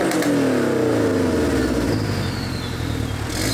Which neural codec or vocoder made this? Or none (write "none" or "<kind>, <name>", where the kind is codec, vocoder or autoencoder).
none